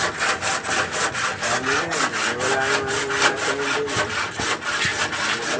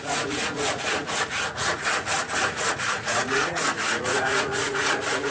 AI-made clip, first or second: second